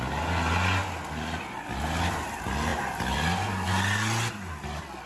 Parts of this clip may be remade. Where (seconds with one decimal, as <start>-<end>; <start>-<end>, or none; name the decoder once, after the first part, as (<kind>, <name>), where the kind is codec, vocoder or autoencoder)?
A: none